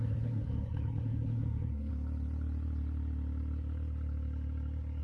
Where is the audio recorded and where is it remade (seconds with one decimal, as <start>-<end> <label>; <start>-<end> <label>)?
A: 0.0-1.9 remade; 1.9-5.0 recorded